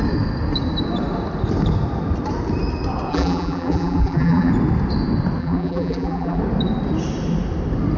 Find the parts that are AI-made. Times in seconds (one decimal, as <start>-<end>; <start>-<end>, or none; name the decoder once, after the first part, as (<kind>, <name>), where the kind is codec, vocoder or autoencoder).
3.1-4.5 (vocoder, BigVGAN v2); 5.4-6.4